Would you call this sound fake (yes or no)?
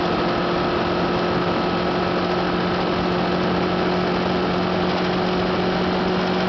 no